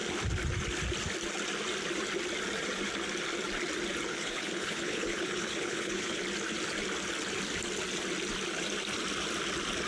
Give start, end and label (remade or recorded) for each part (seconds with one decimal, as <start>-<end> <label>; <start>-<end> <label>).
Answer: 0.0-4.1 recorded; 4.1-6.2 remade; 6.2-9.9 recorded